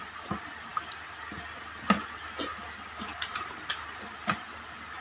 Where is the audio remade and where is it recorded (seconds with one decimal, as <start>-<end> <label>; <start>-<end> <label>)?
0.0-5.0 recorded